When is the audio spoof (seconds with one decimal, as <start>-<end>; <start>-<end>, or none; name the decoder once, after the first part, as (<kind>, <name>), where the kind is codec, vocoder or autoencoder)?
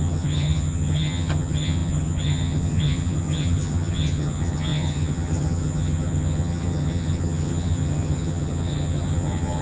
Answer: 0.0-9.6 (vocoder, HiFi-GAN)